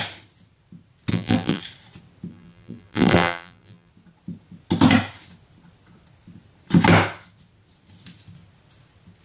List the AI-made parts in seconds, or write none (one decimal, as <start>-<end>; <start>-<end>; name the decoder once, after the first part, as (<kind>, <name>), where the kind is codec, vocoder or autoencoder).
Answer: 1.1-1.6 (vocoder, BigVGAN v2); 2.3-3.9